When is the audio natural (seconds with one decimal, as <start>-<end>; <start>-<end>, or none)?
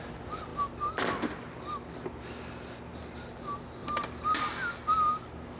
0.0-3.8; 4.4-5.6